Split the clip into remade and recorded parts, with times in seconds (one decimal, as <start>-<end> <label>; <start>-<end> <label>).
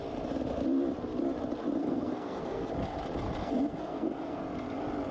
0.0-1.8 recorded; 1.8-2.7 remade; 2.7-3.4 recorded; 3.4-4.4 remade; 4.4-5.1 recorded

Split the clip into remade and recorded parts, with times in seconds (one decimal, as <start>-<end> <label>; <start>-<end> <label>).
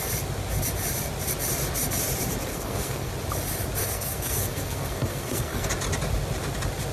0.0-2.5 recorded; 2.5-3.1 remade; 3.1-3.8 recorded; 3.8-5.7 remade; 5.7-6.9 recorded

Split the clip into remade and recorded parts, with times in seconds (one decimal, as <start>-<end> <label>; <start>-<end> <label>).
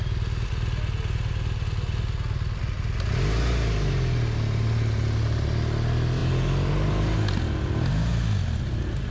0.0-9.1 recorded